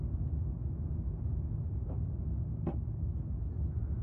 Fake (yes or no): no